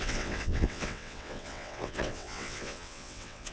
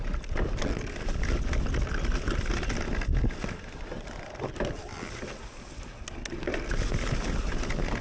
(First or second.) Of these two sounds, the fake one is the first